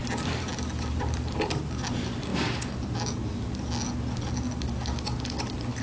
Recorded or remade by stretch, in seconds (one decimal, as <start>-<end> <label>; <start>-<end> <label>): 0.0-2.3 remade; 2.3-5.8 recorded